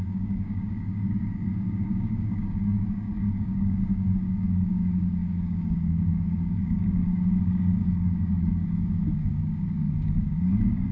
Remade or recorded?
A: remade